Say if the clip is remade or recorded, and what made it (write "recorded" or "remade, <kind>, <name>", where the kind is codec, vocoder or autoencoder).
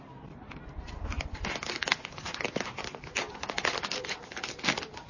recorded